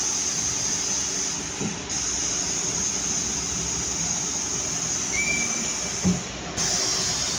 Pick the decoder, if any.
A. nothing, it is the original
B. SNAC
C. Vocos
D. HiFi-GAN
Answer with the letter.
A